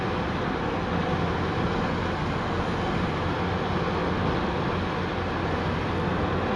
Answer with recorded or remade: recorded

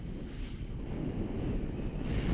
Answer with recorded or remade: recorded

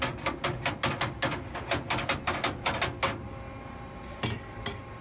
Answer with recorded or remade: recorded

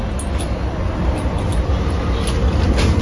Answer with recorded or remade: recorded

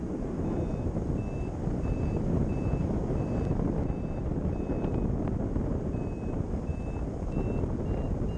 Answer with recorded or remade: recorded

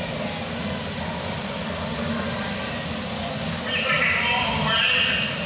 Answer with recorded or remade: recorded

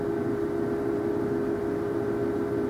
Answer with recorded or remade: recorded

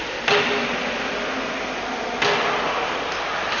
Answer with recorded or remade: recorded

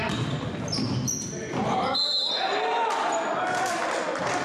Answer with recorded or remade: recorded